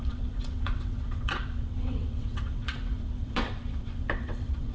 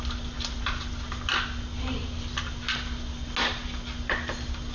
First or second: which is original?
second